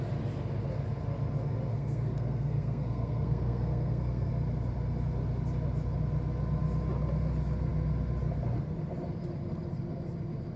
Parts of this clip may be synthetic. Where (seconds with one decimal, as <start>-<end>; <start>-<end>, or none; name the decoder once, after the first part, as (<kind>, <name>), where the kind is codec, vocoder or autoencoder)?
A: 1.7-4.3 (codec, SNAC)